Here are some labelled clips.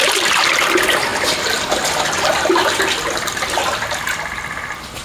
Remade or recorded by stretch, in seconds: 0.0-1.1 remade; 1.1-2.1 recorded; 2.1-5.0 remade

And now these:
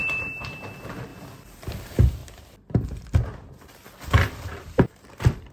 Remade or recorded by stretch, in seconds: 0.0-1.1 remade; 1.1-1.7 recorded; 1.7-2.2 remade; 2.2-4.8 recorded; 4.8-5.5 remade

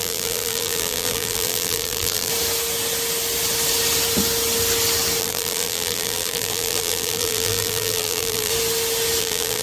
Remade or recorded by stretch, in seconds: 0.0-2.3 remade; 2.3-5.2 recorded; 5.2-8.5 remade; 8.5-9.2 recorded; 9.2-9.6 remade

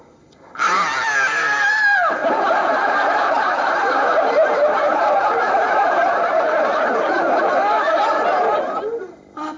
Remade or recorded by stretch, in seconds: 0.0-2.2 recorded; 2.2-7.0 remade; 7.0-9.6 recorded

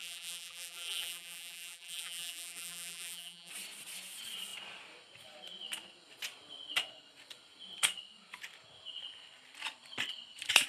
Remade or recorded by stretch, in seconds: 0.0-3.5 remade; 3.5-10.7 recorded

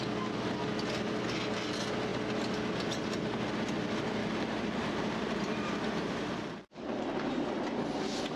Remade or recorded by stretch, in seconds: 0.0-4.2 recorded; 4.2-7.4 remade; 7.4-8.4 recorded